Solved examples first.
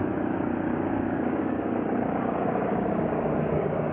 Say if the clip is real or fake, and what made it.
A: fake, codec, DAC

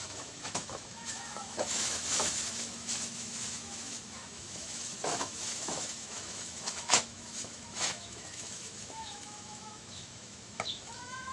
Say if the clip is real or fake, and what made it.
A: fake, autoencoder, DAC-VAE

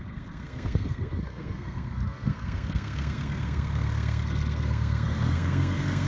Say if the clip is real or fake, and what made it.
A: fake, codec, SNAC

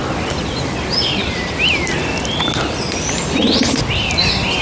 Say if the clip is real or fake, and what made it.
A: real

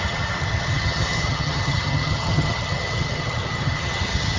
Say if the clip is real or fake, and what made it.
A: fake, vocoder, HiFi-GAN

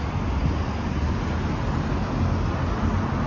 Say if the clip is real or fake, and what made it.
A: real